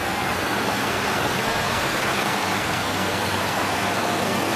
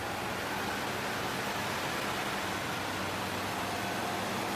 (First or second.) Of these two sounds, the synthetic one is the first